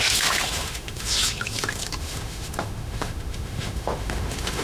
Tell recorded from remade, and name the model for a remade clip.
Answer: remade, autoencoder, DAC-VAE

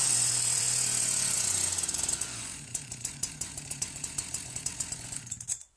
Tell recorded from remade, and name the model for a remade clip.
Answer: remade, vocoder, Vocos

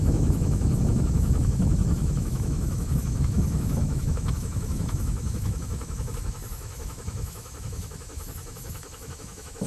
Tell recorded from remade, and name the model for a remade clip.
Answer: remade, autoencoder, DAC-VAE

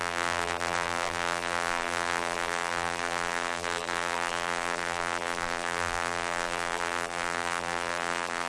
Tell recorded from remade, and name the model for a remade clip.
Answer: remade, vocoder, BigVGAN v2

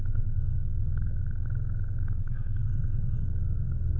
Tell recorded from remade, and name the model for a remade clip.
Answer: remade, codec, SNAC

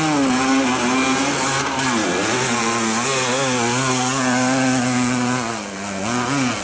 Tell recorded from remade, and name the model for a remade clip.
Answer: recorded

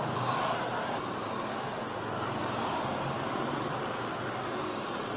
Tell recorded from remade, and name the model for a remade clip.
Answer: recorded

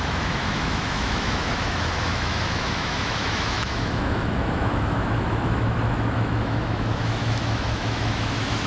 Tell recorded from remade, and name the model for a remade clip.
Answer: remade, autoencoder, DAC-VAE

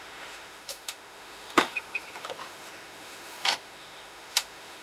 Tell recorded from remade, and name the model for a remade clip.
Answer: remade, autoencoder, DAC-VAE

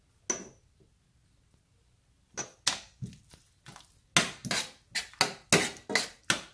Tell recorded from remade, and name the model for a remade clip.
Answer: recorded